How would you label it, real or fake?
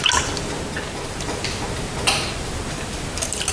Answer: real